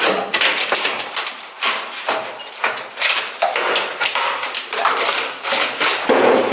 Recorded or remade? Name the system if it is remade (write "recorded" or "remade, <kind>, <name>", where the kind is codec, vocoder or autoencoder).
recorded